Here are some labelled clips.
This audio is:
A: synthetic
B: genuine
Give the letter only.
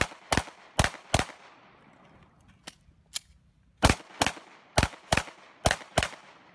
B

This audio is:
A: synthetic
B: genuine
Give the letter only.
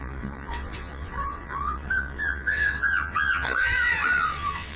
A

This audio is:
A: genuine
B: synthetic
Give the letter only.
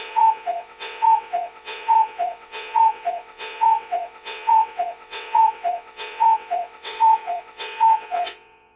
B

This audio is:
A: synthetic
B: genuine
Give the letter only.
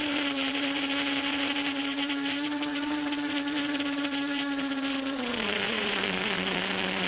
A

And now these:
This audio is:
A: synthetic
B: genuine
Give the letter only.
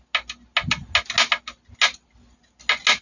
B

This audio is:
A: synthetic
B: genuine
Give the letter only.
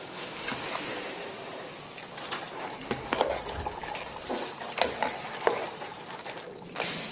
B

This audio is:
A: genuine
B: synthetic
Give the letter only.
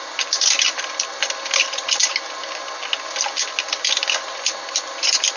A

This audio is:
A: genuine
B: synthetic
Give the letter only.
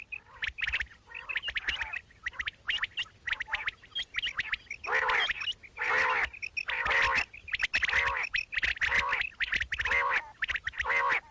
A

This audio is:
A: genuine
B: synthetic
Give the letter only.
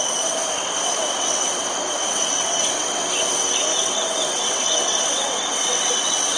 B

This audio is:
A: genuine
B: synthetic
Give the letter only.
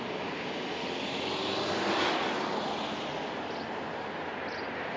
A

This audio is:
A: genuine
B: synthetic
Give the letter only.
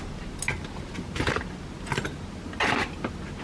A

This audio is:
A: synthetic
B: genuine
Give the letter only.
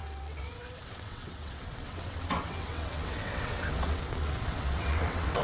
A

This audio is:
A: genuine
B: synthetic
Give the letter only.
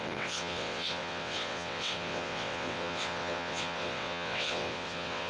B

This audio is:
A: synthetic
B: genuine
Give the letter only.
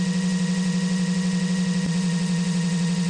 A